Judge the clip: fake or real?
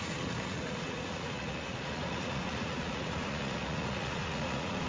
fake